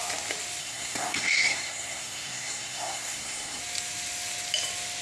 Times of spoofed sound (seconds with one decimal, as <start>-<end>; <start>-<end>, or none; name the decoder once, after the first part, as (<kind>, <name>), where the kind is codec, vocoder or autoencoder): 0.6-3.6 (codec, SNAC)